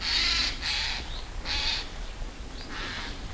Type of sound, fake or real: real